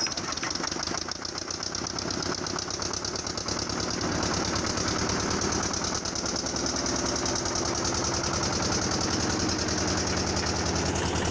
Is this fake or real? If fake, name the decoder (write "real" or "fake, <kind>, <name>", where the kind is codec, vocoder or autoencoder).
real